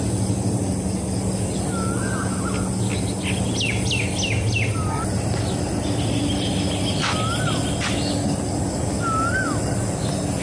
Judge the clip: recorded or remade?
recorded